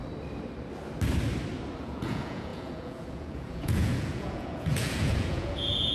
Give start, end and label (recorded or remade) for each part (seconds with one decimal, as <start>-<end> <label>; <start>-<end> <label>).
0.0-1.8 recorded; 1.8-5.9 remade